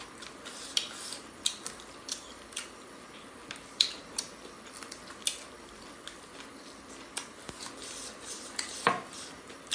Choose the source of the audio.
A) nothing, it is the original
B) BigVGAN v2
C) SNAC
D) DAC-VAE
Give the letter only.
A